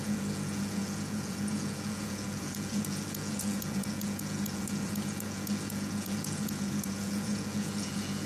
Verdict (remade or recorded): remade